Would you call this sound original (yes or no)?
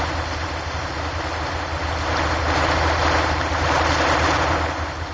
yes